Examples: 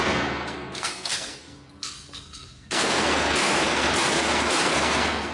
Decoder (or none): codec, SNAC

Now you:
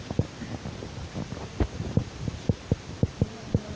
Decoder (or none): none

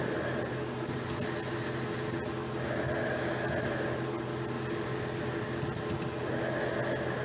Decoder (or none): none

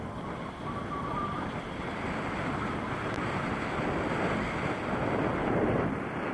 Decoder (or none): none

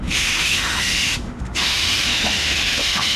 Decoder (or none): autoencoder, DAC-VAE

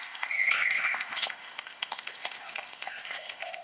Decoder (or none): codec, ZipCodec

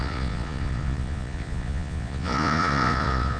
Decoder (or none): vocoder, Vocos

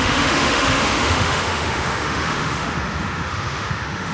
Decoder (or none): autoencoder, DAC-VAE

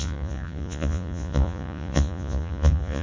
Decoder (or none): vocoder, Vocos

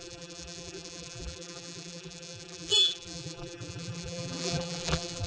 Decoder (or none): vocoder, BigVGAN v2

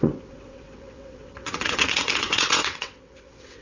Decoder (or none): vocoder, WaveNeXt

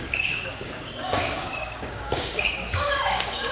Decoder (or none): codec, DAC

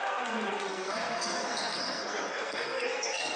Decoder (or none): codec, SNAC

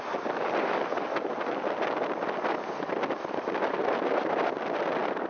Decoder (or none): none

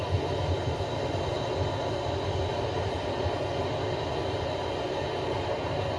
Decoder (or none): none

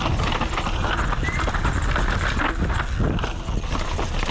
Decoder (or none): none